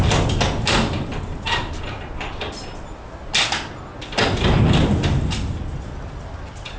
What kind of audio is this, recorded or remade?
recorded